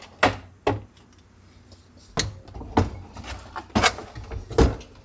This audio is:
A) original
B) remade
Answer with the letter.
A